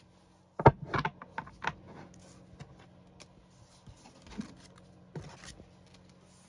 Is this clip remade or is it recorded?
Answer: recorded